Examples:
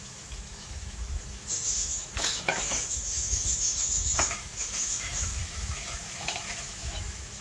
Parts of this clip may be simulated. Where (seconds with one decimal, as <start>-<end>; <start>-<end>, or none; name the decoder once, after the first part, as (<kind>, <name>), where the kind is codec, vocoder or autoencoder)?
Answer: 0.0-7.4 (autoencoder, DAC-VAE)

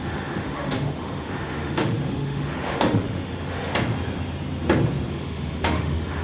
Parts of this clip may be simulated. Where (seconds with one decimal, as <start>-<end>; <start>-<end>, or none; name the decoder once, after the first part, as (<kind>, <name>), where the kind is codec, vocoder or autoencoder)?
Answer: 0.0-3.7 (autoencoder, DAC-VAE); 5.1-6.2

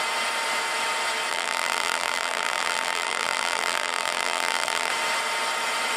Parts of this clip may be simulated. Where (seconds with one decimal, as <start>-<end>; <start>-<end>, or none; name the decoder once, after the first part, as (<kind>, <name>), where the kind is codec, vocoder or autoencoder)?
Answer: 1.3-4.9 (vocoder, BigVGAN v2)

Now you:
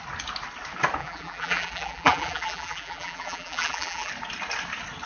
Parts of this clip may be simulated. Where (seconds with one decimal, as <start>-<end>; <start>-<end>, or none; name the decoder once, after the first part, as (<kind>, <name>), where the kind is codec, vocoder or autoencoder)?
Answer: 1.0-4.1 (vocoder, BigVGAN v2)

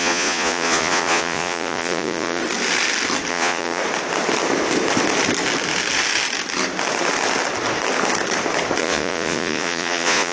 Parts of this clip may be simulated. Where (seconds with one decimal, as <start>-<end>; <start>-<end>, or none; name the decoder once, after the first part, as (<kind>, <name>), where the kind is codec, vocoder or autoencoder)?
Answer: 0.0-2.4 (vocoder, Vocos); 3.3-3.8; 8.8-10.3

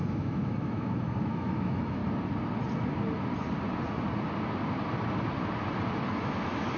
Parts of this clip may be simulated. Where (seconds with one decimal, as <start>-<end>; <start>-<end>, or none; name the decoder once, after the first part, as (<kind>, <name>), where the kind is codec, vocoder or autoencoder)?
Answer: 0.0-2.0 (autoencoder, DAC-VAE); 6.1-6.8